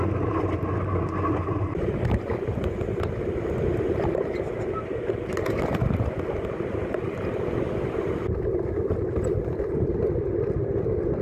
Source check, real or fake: real